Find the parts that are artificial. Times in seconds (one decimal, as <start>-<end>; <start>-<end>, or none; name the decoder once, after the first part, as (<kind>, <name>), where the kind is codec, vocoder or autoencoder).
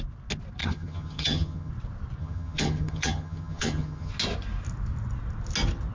0.6-1.7 (vocoder, HiFi-GAN); 2.2-4.1